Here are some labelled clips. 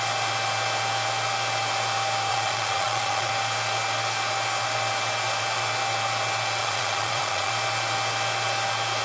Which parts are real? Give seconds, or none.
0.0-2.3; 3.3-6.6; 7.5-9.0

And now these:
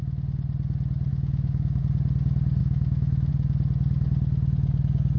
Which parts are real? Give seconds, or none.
0.0-1.1; 1.8-2.6; 3.3-5.2

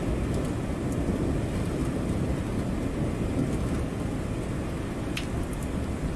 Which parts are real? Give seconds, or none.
0.0-6.2

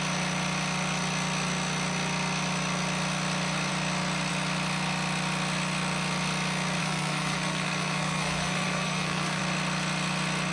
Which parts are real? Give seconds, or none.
0.0-6.8; 9.4-10.5